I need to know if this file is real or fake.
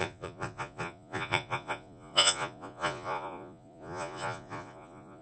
fake